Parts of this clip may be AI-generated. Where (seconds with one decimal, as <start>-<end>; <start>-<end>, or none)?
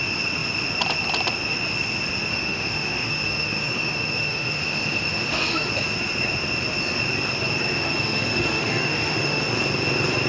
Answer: 2.3-5.7; 7.7-9.5